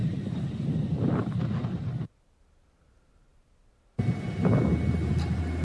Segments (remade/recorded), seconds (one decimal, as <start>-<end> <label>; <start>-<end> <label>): 0.0-5.6 recorded